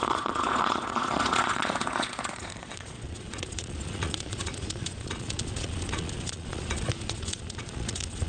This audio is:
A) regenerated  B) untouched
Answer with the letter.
A